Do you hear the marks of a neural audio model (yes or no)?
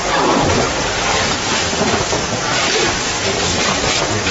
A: yes